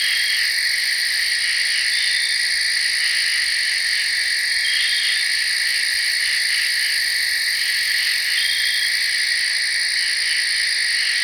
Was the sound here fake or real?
real